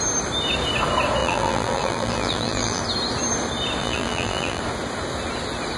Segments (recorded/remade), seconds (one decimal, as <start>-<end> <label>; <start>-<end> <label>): 0.0-1.2 recorded; 1.2-2.8 remade; 2.8-3.8 recorded; 3.8-4.6 remade; 4.6-5.8 recorded